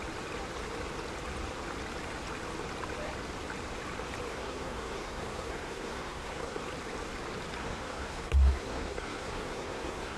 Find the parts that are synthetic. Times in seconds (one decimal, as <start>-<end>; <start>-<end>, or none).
4.3-6.6; 7.6-10.2